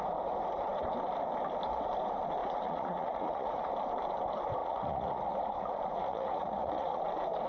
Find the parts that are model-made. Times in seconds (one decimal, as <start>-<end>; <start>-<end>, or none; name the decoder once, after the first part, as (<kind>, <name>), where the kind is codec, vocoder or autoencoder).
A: 2.4-3.7 (vocoder, Vocos); 4.6-7.0